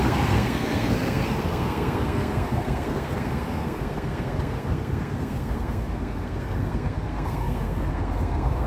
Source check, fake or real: fake